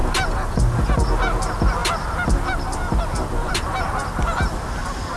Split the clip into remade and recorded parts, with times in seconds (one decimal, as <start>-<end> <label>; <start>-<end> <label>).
0.0-5.2 recorded